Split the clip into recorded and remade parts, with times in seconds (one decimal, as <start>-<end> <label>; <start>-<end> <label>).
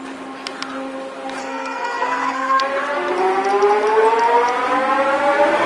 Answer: 0.0-1.4 recorded; 1.4-2.6 remade; 2.6-5.7 recorded